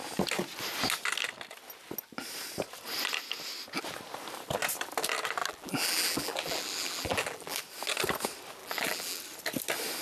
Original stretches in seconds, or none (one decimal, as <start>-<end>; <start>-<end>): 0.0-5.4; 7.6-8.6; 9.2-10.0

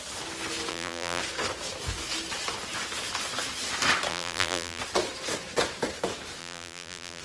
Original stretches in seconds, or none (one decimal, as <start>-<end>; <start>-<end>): 0.0-0.7; 1.2-4.1; 4.8-6.4

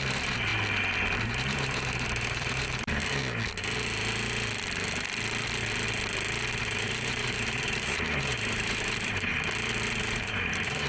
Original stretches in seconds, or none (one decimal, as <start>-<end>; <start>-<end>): 0.5-1.2; 3.0-6.6; 9.3-10.0

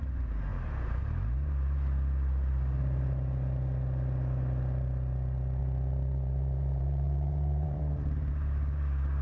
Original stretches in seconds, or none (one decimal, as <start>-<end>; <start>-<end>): 0.0-5.6; 8.3-9.2

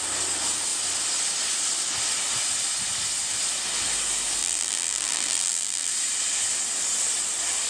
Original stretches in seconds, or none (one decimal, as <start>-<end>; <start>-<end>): 0.0-4.4; 5.9-7.7

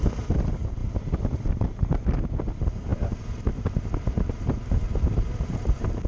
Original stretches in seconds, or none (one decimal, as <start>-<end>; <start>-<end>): none